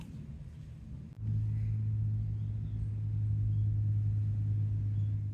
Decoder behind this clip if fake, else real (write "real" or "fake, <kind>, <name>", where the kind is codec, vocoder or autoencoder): real